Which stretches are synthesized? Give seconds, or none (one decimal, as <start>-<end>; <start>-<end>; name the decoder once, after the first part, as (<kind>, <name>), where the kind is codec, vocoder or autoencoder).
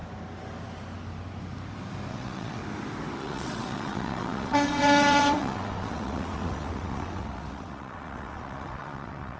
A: 2.1-2.6 (vocoder, WaveNeXt); 3.2-9.4